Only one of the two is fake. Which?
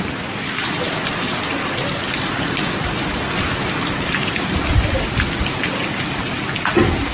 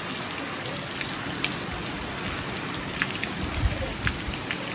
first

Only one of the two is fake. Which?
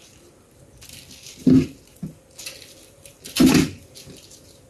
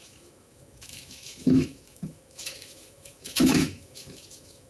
second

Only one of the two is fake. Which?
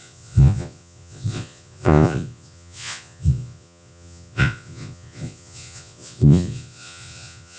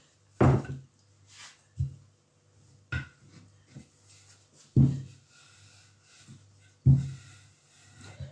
first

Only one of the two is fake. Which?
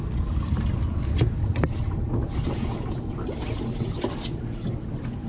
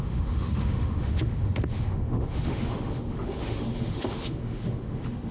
second